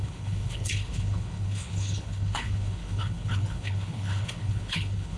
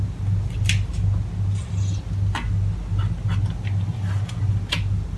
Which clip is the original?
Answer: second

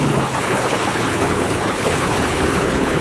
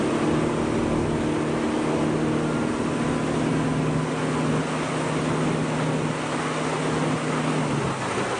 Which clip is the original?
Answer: second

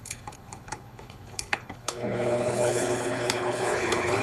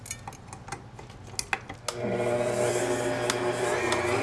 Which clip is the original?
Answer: second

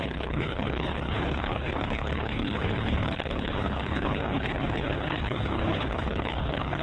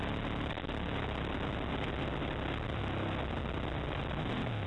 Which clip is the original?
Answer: second